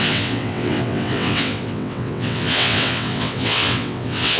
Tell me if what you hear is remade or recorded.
remade